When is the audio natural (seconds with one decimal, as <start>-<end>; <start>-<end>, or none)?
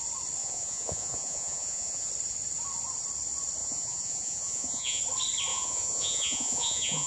0.0-0.4; 2.1-3.6; 5.0-5.5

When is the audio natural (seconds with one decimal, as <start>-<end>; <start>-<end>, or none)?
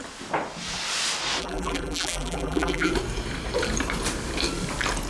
0.0-1.4; 2.9-5.1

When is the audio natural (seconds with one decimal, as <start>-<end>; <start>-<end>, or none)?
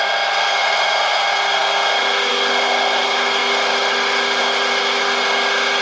0.0-0.6; 1.2-5.8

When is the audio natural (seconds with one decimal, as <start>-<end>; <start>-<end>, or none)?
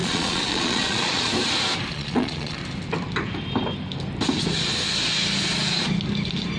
1.3-1.9; 2.6-6.6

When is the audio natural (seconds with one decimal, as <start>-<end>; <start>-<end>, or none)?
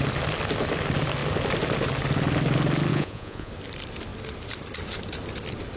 0.0-2.9; 3.5-5.8